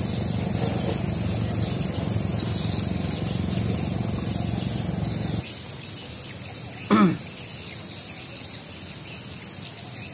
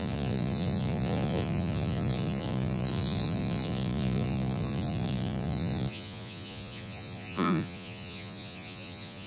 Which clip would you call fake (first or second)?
second